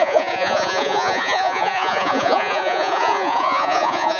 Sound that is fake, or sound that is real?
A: fake